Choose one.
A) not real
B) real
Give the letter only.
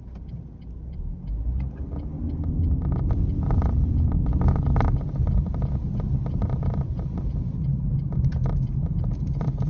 B